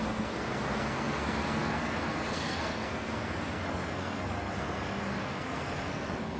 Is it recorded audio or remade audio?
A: remade